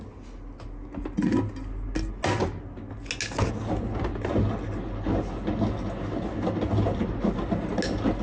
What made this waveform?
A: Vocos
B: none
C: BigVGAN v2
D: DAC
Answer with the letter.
B